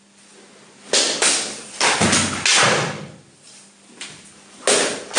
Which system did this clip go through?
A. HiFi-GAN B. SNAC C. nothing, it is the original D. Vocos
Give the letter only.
C